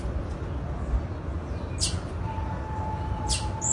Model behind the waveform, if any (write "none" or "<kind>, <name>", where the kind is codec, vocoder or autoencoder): none